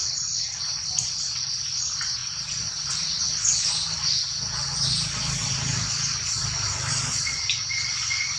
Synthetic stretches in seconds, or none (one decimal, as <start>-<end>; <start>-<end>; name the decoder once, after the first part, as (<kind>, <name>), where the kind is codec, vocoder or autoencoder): none